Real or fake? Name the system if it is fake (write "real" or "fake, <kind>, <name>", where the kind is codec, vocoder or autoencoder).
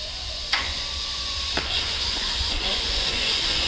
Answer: fake, vocoder, Vocos